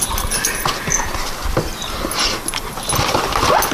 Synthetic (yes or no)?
no